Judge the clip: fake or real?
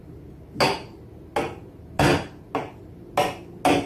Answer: real